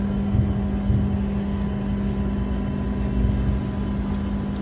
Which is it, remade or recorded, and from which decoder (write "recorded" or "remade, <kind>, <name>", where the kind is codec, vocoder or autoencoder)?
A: recorded